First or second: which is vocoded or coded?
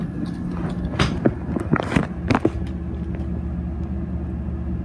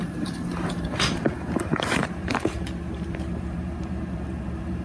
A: second